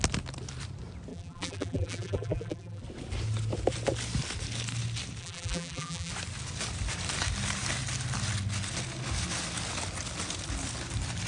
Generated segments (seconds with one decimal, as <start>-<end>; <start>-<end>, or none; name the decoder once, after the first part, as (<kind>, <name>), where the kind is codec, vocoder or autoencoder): 1.1-2.8 (vocoder, BigVGAN v2); 5.2-6.1